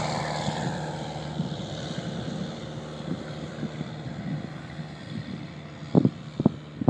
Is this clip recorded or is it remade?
recorded